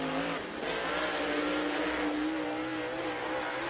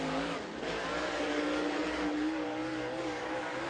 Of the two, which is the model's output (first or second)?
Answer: second